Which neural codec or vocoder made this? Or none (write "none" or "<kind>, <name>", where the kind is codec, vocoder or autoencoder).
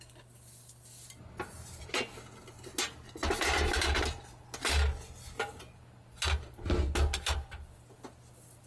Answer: none